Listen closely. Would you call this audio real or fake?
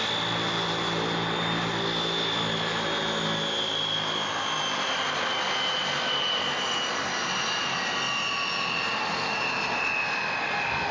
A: real